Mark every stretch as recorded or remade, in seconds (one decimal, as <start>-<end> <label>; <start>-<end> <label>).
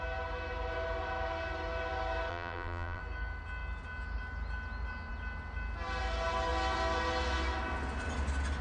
0.0-2.3 recorded; 2.3-3.0 remade; 3.0-8.6 recorded